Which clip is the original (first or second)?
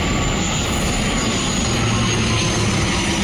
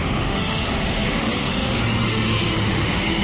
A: first